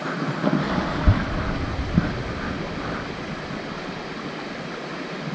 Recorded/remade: remade